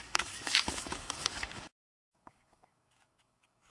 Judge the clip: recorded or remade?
remade